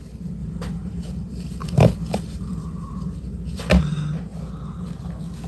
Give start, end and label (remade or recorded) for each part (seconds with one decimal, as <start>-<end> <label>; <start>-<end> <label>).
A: 0.0-0.4 recorded; 0.4-3.7 remade; 3.7-5.5 recorded